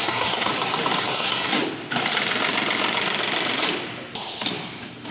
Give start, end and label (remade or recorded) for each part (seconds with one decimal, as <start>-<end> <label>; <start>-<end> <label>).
0.0-0.5 remade; 0.5-1.0 recorded; 1.0-1.6 remade; 1.6-5.1 recorded